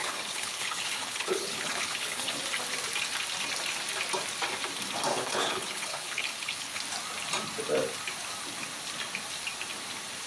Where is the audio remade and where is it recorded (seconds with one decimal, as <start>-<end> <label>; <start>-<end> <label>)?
0.0-2.4 remade; 2.4-5.1 recorded; 5.1-6.8 remade; 6.8-10.3 recorded